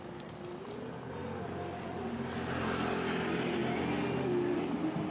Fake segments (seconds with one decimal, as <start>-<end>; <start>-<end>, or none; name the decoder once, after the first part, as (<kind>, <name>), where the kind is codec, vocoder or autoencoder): none